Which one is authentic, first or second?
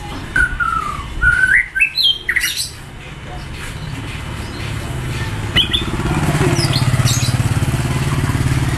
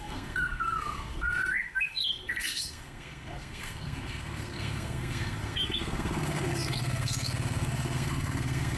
first